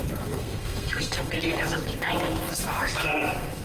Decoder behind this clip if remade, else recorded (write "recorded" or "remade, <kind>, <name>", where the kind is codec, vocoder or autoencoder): remade, codec, SNAC